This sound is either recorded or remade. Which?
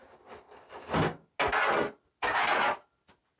recorded